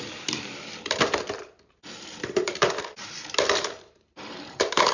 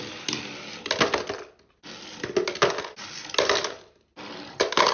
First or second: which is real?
second